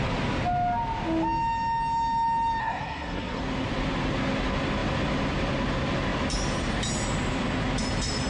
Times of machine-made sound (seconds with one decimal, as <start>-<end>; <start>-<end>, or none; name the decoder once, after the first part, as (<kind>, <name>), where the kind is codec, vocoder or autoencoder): 2.6-3.4 (codec, SNAC)